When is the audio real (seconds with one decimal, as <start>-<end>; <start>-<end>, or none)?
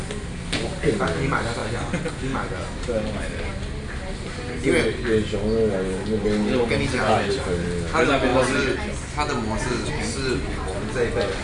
0.0-11.4